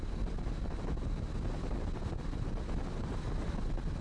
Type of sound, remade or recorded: recorded